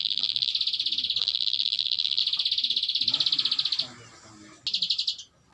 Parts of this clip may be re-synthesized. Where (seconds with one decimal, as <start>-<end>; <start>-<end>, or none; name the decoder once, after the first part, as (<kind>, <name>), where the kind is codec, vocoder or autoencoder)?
0.0-0.5 (vocoder, BigVGAN v2); 1.2-2.2